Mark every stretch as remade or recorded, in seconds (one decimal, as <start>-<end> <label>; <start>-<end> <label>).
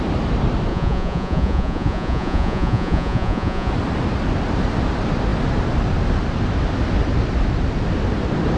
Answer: 0.0-0.7 recorded; 0.7-3.7 remade; 3.7-8.6 recorded